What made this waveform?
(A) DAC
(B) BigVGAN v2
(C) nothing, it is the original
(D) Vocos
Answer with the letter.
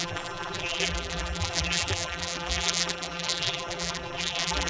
B